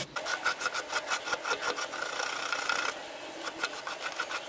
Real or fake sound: real